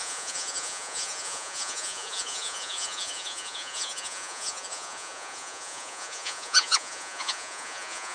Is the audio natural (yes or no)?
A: no